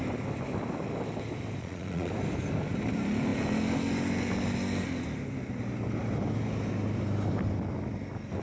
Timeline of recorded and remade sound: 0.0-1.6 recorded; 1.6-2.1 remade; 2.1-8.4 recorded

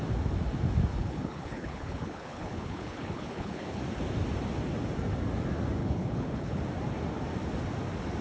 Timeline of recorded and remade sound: 0.0-0.9 recorded; 0.9-3.8 remade; 3.8-5.8 recorded; 5.8-6.6 remade; 6.6-8.2 recorded

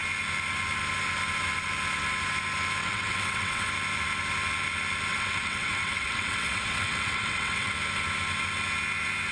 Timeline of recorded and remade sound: 0.0-2.8 recorded; 2.8-3.7 remade; 3.7-5.1 recorded; 5.1-7.7 remade; 7.7-9.3 recorded

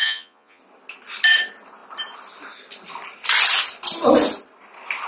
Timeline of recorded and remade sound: 0.0-0.6 remade; 0.6-5.1 recorded

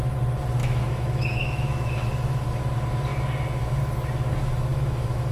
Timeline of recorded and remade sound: 0.0-0.6 recorded; 0.6-2.5 remade; 2.5-4.7 recorded; 4.7-5.3 remade

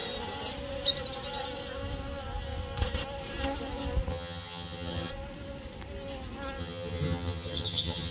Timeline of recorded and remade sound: 0.0-4.1 recorded; 4.1-5.1 remade; 5.1-6.6 recorded; 6.6-8.1 remade

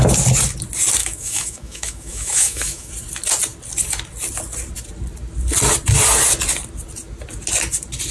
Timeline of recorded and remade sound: 0.0-1.0 recorded; 1.0-2.9 remade; 2.9-8.1 recorded